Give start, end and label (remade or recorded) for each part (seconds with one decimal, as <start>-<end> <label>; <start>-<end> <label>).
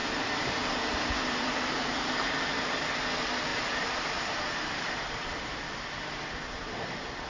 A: 0.0-2.1 remade; 2.1-3.5 recorded; 3.5-4.9 remade; 4.9-7.3 recorded